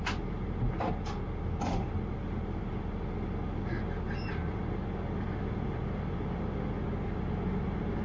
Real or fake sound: real